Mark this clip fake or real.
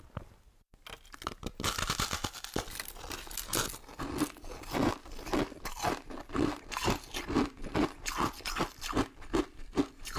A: real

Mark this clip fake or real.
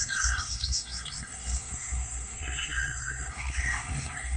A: fake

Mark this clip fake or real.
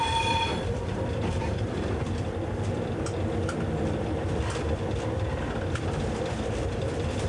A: fake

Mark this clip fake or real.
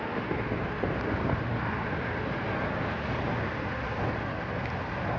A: real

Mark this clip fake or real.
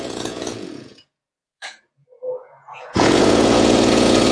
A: fake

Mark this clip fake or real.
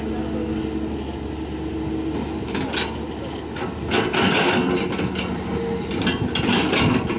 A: real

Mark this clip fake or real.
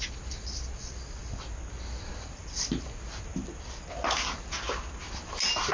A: real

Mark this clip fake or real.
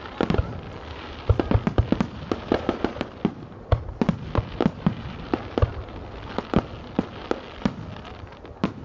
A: real